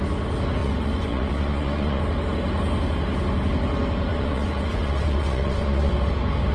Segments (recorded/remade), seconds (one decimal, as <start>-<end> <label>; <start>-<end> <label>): 0.0-0.6 recorded; 0.6-2.0 remade; 2.0-4.1 recorded; 4.1-5.9 remade; 5.9-6.5 recorded